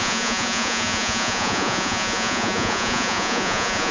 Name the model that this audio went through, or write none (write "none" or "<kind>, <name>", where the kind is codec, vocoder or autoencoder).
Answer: vocoder, Vocos